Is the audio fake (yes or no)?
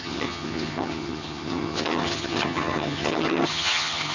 yes